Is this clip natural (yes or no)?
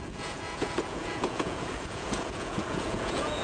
no